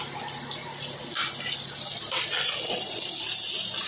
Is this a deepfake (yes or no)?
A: no